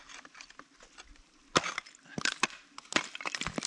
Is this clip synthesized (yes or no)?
no